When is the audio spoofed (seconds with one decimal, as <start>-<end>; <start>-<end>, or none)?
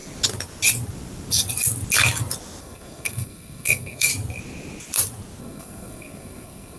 2.6-4.1; 5.4-6.8